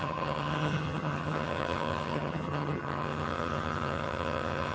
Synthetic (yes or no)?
yes